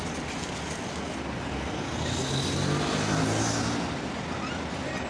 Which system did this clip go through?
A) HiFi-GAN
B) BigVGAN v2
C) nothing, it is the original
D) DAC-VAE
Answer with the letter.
C